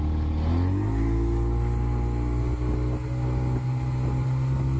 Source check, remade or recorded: recorded